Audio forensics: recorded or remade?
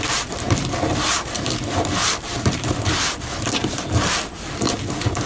remade